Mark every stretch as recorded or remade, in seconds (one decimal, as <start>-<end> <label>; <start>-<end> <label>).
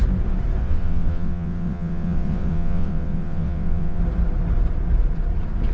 0.0-0.6 recorded; 0.6-4.0 remade; 4.0-5.7 recorded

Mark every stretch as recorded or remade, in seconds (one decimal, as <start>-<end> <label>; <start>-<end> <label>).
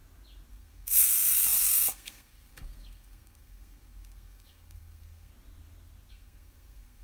0.0-0.5 recorded; 0.5-5.3 remade; 5.3-6.1 recorded; 6.1-7.0 remade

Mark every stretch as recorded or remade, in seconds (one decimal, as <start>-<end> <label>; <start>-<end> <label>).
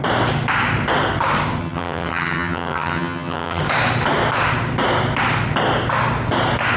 0.0-1.6 recorded; 1.6-3.6 remade; 3.6-6.8 recorded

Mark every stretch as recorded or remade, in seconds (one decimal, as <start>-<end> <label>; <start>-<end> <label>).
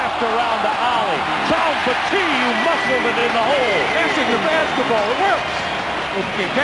0.0-3.2 recorded; 3.2-3.9 remade; 3.9-6.6 recorded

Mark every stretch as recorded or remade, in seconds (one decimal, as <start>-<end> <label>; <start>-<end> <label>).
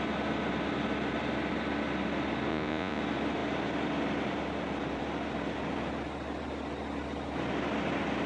0.0-2.5 recorded; 2.5-3.0 remade; 3.0-8.3 recorded